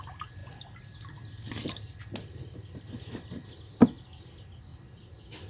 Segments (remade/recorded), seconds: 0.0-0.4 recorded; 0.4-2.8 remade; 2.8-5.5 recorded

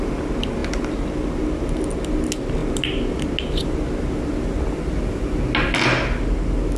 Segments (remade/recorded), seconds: 0.0-6.8 recorded